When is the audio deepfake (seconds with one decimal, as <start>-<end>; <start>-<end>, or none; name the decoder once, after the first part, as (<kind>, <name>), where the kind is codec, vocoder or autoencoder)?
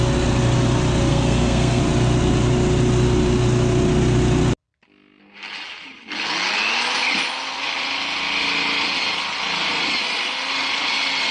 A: 1.1-1.8 (codec, SNAC)